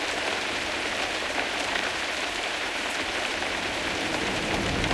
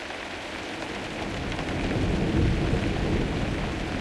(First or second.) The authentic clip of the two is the second